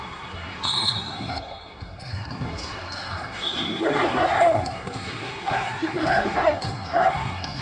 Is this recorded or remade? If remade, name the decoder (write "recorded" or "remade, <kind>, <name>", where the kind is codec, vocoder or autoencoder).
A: remade, codec, SNAC